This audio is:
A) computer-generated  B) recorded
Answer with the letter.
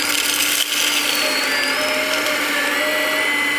B